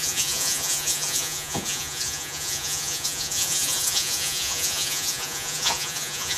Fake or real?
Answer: fake